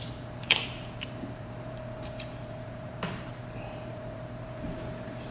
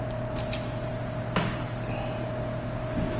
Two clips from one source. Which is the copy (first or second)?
first